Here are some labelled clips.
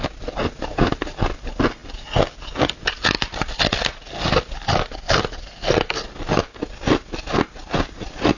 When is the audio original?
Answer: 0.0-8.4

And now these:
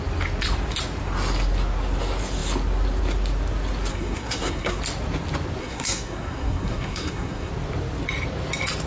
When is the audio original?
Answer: 0.0-3.9; 4.8-5.6; 7.5-8.9

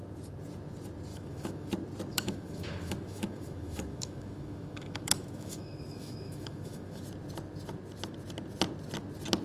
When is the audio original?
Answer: 0.0-1.1; 1.7-2.1; 7.0-9.4

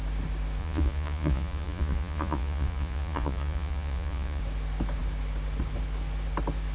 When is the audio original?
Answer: 0.0-0.6; 4.4-6.7

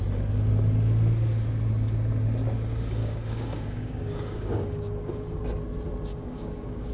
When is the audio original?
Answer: 0.0-3.0; 5.4-6.1

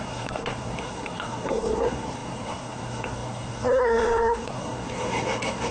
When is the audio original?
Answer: none